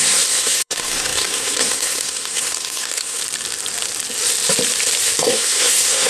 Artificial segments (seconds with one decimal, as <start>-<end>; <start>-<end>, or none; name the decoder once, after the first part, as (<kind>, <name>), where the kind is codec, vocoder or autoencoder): 0.0-3.2 (codec, SNAC); 5.2-6.1